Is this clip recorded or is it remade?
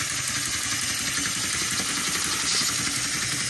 recorded